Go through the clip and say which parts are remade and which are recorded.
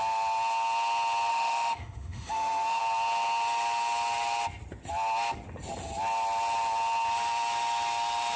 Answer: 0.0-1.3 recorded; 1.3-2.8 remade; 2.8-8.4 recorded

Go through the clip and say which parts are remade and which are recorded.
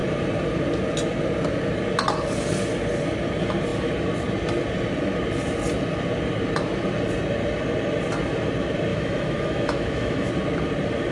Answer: 0.0-8.9 recorded; 8.9-10.3 remade; 10.3-11.1 recorded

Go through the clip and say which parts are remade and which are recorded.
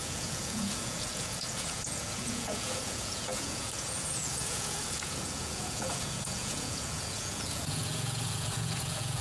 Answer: 0.0-9.2 remade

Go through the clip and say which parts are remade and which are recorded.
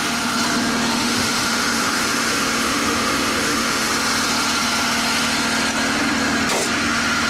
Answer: 0.0-0.9 recorded; 0.9-3.9 remade; 3.9-7.3 recorded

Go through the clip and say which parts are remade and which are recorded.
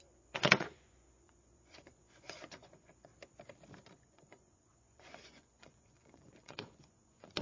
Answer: 0.0-3.1 remade; 3.1-3.9 recorded; 3.9-7.4 remade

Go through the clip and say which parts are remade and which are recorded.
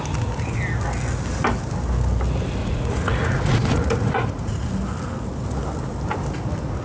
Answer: 0.0-2.6 recorded; 2.6-4.7 remade; 4.7-6.8 recorded